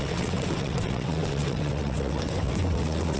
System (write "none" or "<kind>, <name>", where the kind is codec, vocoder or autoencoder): vocoder, WaveNeXt